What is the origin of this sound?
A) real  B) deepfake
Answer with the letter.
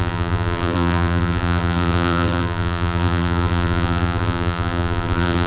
B